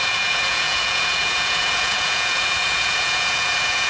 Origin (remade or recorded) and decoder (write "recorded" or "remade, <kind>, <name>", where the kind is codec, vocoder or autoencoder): remade, vocoder, Vocos